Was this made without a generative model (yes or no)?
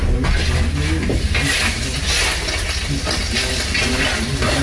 yes